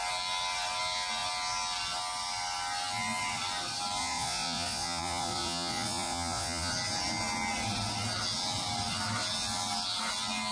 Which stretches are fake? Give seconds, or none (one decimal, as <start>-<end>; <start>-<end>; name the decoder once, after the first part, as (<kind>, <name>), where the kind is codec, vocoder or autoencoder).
4.0-6.7 (vocoder, Vocos)